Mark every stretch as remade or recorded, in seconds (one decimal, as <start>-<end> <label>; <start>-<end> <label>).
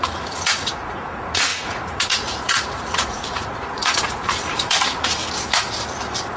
0.0-5.2 remade; 5.2-6.4 recorded